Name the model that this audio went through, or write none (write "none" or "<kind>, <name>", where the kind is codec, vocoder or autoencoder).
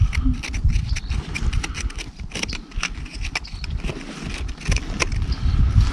none